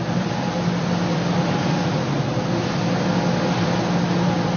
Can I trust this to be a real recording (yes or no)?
yes